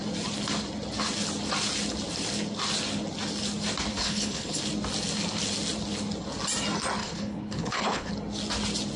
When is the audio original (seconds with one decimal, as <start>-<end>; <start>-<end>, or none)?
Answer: 0.0-3.9; 4.6-7.0; 8.1-9.0